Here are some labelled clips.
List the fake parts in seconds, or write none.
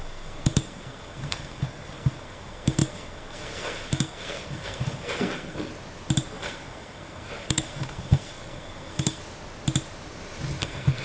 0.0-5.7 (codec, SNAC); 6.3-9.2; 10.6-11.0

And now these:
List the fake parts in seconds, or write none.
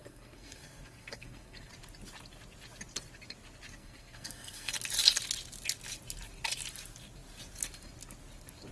0.0-1.7 (codec, SNAC); 3.7-4.7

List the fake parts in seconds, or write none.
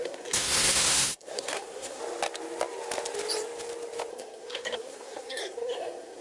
0.0-2.0 (codec, SNAC); 4.1-6.2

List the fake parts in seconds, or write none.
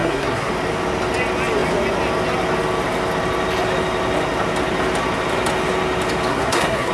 0.0-0.5 (codec, SNAC); 6.3-6.9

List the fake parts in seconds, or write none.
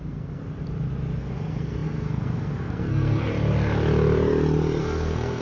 0.0-0.4 (codec, SNAC); 1.2-3.3; 4.8-5.4